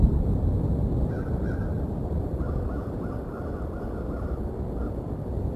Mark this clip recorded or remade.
recorded